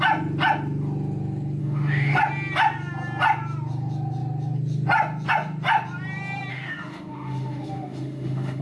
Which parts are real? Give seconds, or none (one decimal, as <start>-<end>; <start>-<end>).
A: 0.0-1.6; 2.2-6.5